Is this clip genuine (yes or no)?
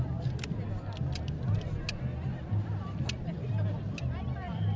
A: yes